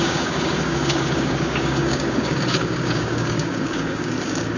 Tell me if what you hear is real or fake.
fake